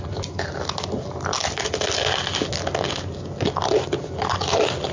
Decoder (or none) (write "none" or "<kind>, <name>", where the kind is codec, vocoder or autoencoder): none